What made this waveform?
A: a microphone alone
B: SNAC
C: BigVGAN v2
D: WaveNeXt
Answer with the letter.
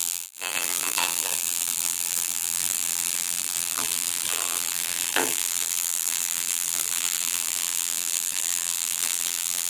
C